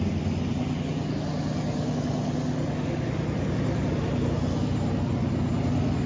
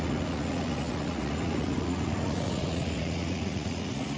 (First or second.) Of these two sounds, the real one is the first